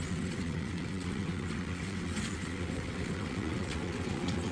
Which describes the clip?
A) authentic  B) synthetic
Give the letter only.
B